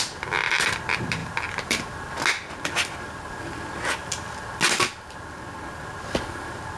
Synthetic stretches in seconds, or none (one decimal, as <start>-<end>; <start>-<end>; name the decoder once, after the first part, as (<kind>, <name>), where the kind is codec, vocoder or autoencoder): none